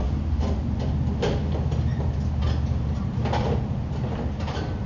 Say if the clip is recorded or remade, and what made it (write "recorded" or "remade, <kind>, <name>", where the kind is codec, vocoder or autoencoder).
recorded